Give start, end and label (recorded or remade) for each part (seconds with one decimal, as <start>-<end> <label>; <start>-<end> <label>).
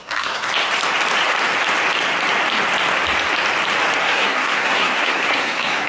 0.0-0.5 remade; 0.5-4.0 recorded; 4.0-5.9 remade